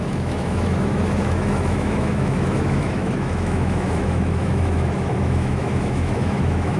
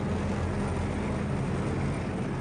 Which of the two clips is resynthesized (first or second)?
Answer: first